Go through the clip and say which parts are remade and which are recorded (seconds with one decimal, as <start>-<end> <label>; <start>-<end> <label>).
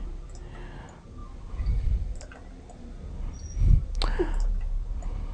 0.0-5.3 recorded